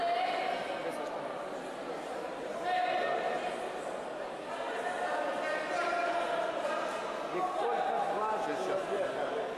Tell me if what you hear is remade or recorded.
recorded